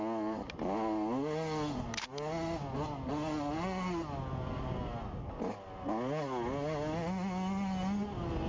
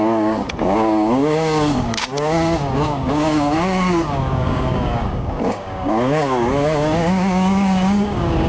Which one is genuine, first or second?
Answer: first